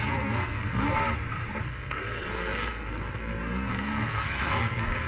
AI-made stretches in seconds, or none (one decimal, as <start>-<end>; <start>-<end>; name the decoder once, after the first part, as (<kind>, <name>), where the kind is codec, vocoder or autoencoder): 0.0-1.0 (codec, SNAC); 1.6-5.1